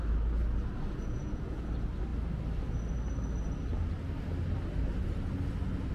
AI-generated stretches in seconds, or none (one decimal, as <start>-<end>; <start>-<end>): 1.0-1.7

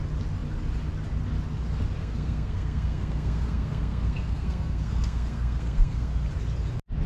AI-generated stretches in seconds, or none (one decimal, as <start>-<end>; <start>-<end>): 2.0-6.3

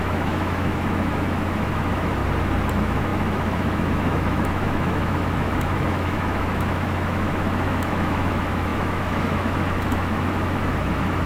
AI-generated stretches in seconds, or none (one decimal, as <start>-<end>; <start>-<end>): 0.0-2.2; 2.7-11.3

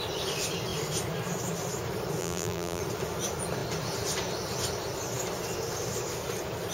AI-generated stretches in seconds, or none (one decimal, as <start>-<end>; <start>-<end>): 2.2-2.8

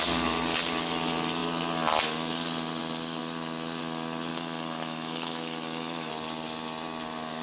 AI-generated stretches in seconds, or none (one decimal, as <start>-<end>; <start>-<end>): 4.3-6.1

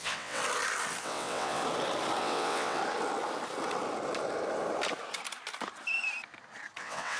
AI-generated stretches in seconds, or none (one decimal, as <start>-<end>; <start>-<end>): 0.0-0.4; 1.0-1.6; 2.2-2.8; 6.8-7.2

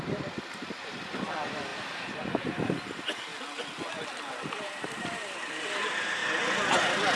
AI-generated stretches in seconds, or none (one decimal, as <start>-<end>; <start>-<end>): 0.0-3.3; 4.1-6.2

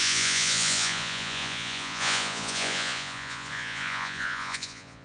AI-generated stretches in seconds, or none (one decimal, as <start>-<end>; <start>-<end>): 0.0-5.0